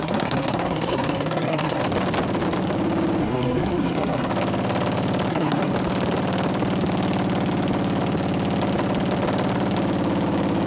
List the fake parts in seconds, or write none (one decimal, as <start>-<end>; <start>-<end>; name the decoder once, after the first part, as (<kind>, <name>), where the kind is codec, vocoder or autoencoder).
0.0-1.8 (codec, SNAC); 3.2-4.3; 5.3-5.7